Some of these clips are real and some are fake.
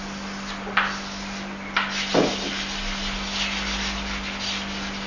real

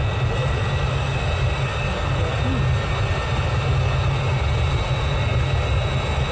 real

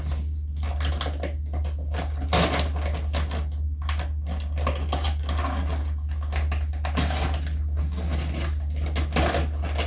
real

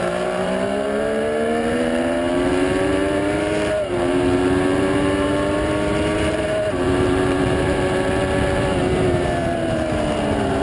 fake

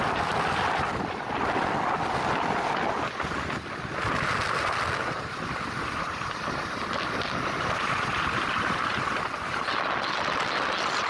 real